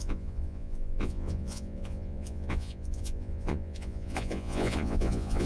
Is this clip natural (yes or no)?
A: no